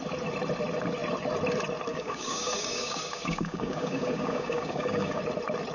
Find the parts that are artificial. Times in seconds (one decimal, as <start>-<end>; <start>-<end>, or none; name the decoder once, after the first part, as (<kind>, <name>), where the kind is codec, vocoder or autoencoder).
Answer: 1.9-5.2 (codec, DAC)